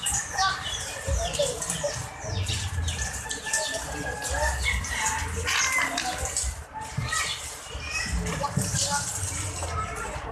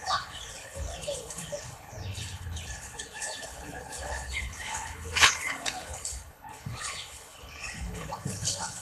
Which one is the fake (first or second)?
second